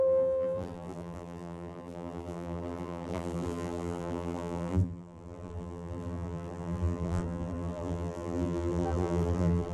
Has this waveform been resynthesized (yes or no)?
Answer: yes